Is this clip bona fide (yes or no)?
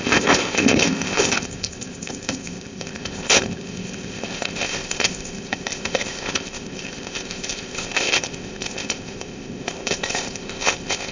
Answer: no